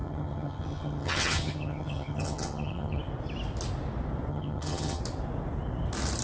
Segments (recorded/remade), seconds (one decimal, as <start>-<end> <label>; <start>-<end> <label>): 0.0-3.0 remade; 3.0-4.3 recorded; 4.3-5.0 remade; 5.0-6.2 recorded